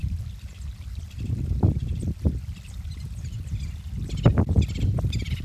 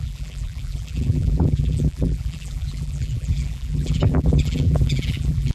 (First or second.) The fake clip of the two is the second